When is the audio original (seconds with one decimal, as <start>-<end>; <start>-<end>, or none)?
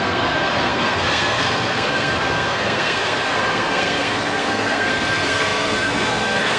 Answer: none